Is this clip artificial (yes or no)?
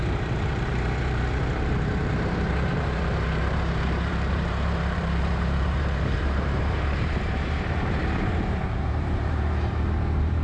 yes